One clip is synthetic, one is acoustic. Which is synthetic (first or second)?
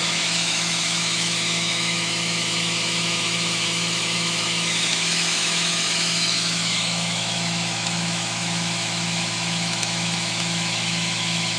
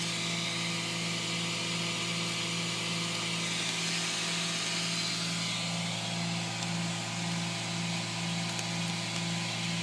first